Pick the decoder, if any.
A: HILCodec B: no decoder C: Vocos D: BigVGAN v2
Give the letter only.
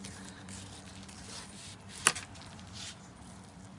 D